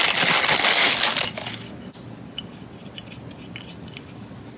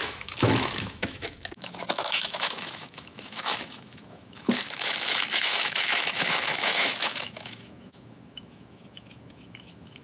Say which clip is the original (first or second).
first